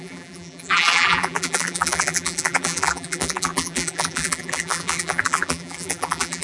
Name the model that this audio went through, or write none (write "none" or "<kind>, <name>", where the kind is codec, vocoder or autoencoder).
vocoder, BigVGAN v2